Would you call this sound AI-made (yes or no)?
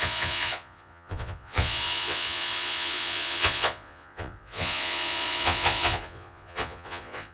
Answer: yes